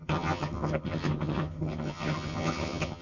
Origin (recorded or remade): remade